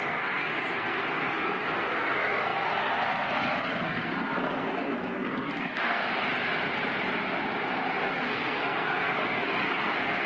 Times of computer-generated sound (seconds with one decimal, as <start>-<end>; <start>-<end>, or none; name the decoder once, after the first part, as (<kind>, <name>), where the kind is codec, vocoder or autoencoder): 0.0-6.0 (codec, SNAC); 8.0-10.3